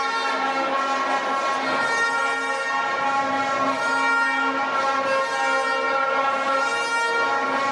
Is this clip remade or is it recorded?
recorded